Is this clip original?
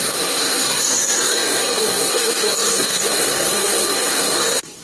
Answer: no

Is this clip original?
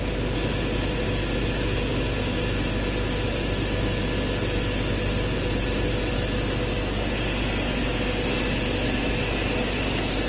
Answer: yes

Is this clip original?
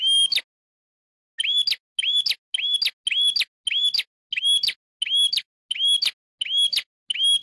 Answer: yes